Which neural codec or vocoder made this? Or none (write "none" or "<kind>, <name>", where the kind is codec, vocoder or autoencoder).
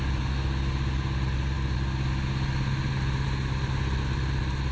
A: none